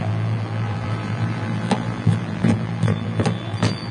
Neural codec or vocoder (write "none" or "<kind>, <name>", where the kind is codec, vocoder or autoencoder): vocoder, BigVGAN v2